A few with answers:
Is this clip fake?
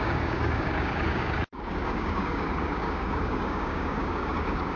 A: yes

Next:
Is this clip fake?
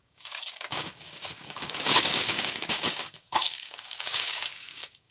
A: yes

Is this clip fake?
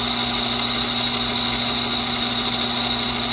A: no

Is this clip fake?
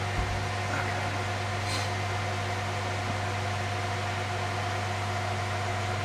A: no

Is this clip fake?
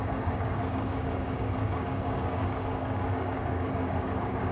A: yes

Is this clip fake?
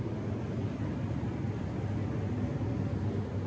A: no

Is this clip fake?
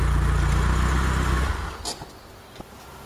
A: no